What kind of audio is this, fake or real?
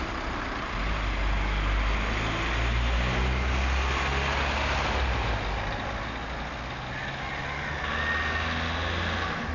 real